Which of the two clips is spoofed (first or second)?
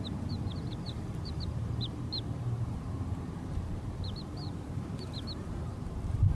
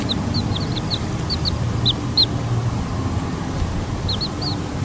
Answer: first